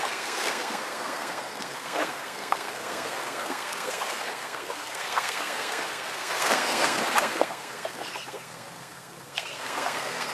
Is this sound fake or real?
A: fake